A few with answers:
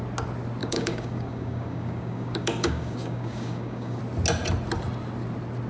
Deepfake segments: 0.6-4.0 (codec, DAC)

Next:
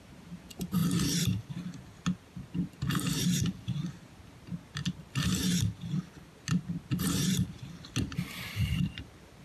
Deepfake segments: none

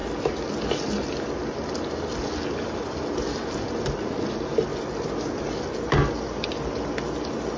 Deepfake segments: none

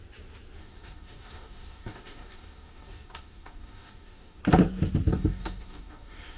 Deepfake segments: 0.6-4.4 (codec, DAC); 5.1-6.4

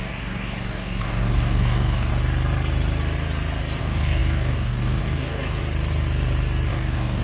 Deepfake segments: 0.0-2.1 (codec, DAC); 3.8-5.6; 6.7-7.2

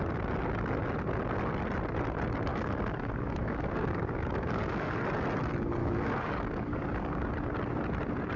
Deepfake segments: 2.5-5.0 (codec, DAC); 5.8-7.2

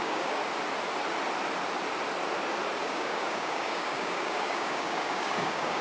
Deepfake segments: 0.0-0.4 (codec, DAC); 2.8-5.8

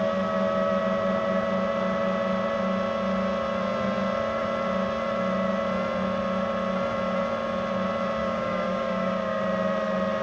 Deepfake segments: 8.2-9.4 (codec, DAC)